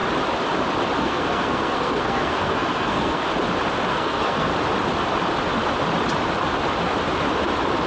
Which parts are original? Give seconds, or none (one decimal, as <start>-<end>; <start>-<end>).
0.0-1.0; 3.3-3.9; 4.5-7.9